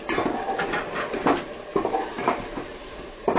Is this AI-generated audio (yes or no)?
yes